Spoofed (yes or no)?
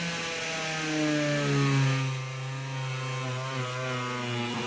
no